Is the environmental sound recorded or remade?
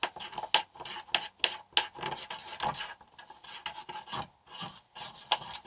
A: recorded